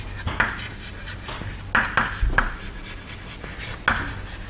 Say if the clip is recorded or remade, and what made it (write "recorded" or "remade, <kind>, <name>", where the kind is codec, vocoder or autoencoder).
recorded